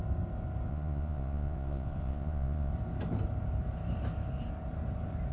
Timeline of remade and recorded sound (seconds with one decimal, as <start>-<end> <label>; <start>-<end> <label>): 0.0-0.7 recorded; 0.7-2.7 remade; 2.7-5.3 recorded